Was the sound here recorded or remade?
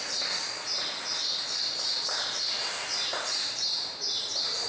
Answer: remade